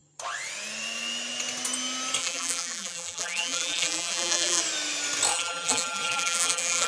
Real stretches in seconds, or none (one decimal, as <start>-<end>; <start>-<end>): 0.0-2.2; 4.6-5.3